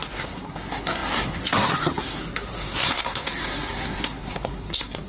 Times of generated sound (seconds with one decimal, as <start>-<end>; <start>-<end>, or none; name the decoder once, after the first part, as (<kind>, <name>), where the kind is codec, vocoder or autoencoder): 0.0-5.1 (codec, SNAC)